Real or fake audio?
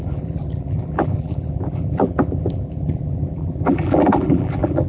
fake